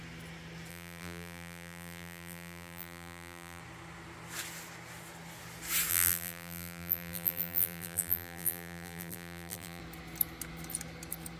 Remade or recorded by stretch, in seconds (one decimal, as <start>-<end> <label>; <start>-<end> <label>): 0.0-0.7 recorded; 0.7-3.6 remade; 3.6-5.9 recorded; 5.9-9.8 remade; 9.8-11.4 recorded